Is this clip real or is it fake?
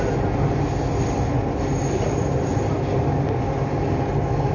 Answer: real